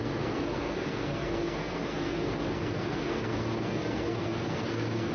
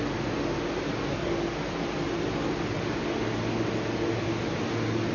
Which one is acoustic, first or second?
second